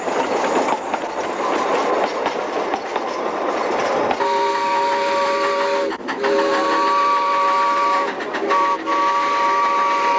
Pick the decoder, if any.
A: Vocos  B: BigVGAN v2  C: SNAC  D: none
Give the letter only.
D